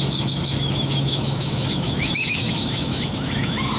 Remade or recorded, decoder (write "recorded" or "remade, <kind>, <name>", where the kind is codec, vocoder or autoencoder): remade, autoencoder, DAC-VAE